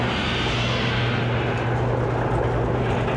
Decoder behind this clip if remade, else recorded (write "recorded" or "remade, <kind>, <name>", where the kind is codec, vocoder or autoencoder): recorded